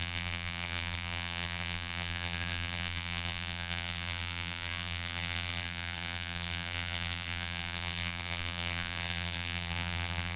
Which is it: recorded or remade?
remade